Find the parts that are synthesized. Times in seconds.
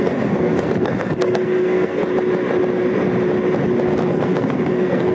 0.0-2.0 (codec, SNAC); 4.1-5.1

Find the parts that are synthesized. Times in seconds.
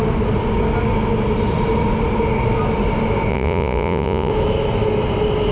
3.3-4.3 (vocoder, Vocos)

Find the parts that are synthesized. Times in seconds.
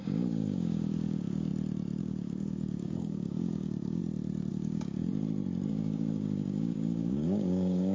0.0-1.5 (codec, DAC); 2.0-4.0; 4.5-5.1; 5.7-7.9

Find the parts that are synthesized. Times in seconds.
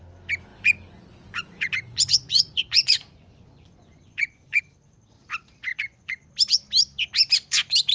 0.5-4.6 (vocoder, Vocos); 5.7-6.3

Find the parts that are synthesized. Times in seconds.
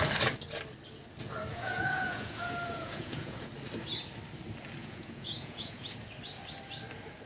1.5-3.5 (vocoder, Vocos); 4.8-5.9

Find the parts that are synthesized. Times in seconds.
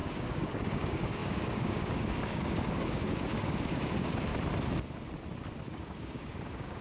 0.0-4.3 (codec, DAC); 5.7-6.8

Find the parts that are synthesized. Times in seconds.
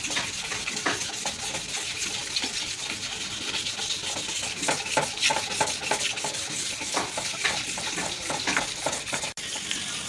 none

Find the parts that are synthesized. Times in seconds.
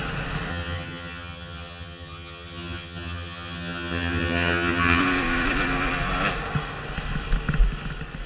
0.5-5.0 (vocoder, HiFi-GAN)